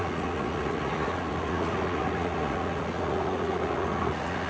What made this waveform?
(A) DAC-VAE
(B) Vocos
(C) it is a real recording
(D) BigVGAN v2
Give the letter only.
B